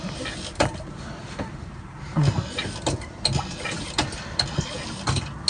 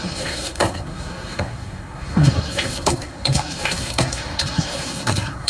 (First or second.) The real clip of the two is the first